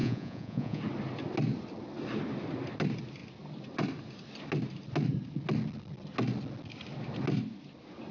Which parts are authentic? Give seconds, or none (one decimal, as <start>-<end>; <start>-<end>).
0.8-8.1